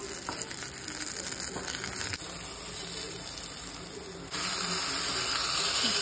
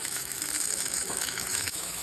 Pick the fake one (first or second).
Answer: second